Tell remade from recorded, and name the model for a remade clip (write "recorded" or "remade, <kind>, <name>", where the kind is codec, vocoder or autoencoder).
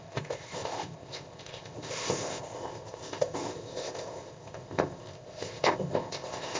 remade, codec, ZipCodec